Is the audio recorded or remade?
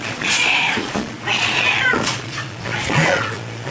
remade